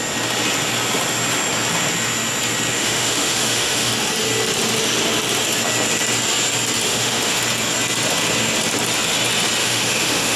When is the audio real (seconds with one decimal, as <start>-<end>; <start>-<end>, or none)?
0.0-2.7; 3.9-6.9; 7.4-9.6